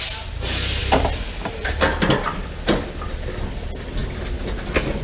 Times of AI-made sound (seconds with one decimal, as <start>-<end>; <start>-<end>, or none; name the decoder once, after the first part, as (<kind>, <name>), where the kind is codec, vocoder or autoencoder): 0.8-3.3 (vocoder, BigVGAN v2); 4.0-4.5